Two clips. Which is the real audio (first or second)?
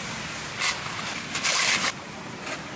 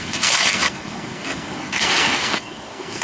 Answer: first